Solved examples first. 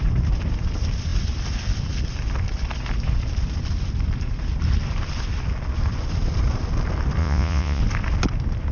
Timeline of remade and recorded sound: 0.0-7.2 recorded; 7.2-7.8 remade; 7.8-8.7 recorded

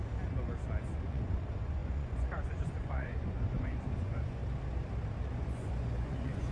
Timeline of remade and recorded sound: 0.0-0.8 recorded; 0.8-4.4 remade; 4.4-5.2 recorded; 5.2-6.5 remade

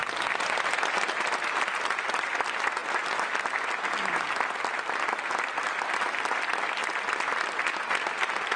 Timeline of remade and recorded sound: 0.0-8.6 recorded

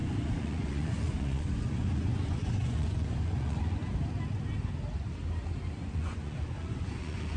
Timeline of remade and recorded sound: 0.0-3.8 remade; 3.8-5.8 recorded; 5.8-7.4 remade

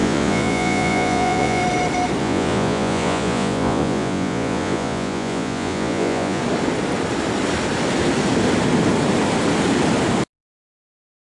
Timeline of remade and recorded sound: 0.0-1.6 remade; 1.6-2.2 recorded; 2.2-6.4 remade; 6.4-11.3 recorded

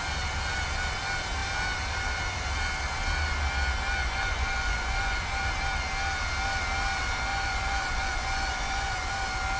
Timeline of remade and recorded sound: 0.0-4.0 recorded; 4.0-5.5 remade; 5.5-7.3 recorded; 7.3-9.1 remade; 9.1-9.6 recorded

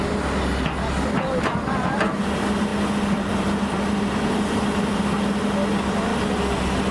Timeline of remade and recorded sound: 0.0-6.9 recorded